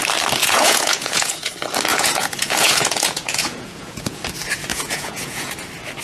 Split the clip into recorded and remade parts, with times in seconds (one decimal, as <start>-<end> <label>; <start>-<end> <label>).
0.0-0.4 recorded; 0.4-1.5 remade; 1.5-1.9 recorded; 1.9-4.2 remade; 4.2-4.7 recorded; 4.7-5.5 remade; 5.5-6.0 recorded